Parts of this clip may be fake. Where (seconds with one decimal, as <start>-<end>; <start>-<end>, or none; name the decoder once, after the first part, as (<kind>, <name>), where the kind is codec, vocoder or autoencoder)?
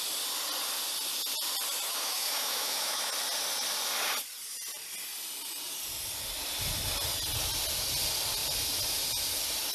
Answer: 1.9-3.1 (autoencoder, DAC-VAE)